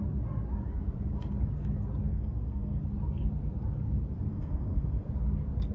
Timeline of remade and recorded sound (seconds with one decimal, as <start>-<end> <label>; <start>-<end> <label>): 0.0-2.1 recorded; 2.1-2.8 remade; 2.8-4.3 recorded; 4.3-5.1 remade; 5.1-5.7 recorded